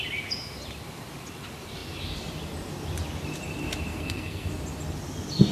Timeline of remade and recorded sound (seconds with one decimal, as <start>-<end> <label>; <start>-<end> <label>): 0.0-3.9 recorded; 3.9-4.5 remade; 4.5-5.5 recorded